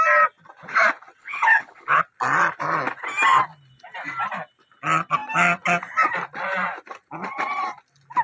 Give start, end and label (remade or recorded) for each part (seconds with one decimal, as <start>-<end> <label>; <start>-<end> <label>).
0.0-1.2 recorded; 1.2-2.0 remade; 2.0-8.2 recorded